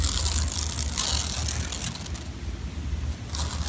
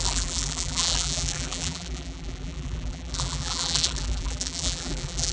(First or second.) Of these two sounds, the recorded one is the first